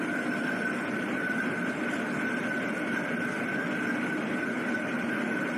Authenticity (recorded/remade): recorded